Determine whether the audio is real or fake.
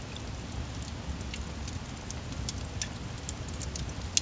real